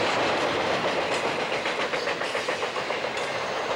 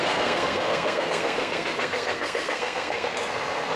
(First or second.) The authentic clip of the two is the first